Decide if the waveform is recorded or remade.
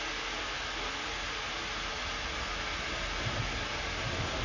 recorded